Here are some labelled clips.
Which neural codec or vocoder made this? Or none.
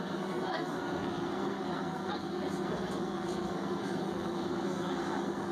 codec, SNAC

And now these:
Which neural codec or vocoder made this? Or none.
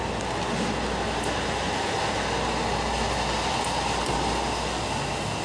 none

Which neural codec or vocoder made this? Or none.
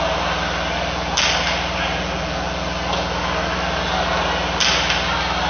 none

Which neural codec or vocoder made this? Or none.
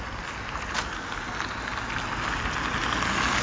none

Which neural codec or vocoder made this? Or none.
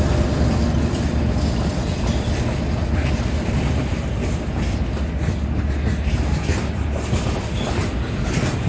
none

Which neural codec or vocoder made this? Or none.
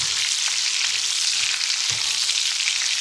none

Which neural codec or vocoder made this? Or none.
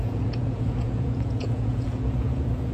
vocoder, Vocos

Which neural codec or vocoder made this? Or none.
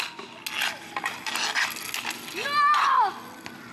none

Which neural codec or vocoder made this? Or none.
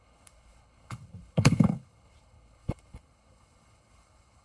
codec, HILCodec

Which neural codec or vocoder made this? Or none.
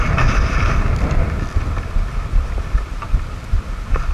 none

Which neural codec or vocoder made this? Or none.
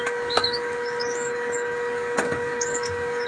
codec, DAC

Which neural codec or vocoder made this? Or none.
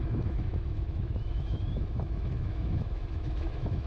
autoencoder, DAC-VAE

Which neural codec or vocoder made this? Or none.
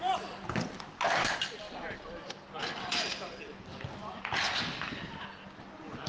none